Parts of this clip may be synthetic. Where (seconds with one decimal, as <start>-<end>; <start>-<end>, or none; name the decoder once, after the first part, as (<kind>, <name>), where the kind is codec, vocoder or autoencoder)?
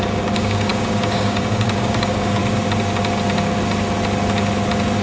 0.0-2.4 (codec, DAC)